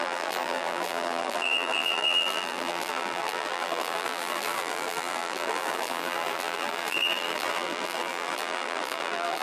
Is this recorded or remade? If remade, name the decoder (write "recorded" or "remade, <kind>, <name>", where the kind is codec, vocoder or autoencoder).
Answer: remade, vocoder, BigVGAN v2